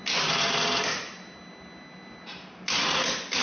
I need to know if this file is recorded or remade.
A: recorded